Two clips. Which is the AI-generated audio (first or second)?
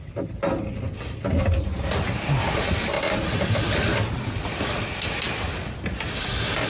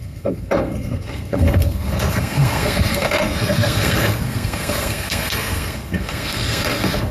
second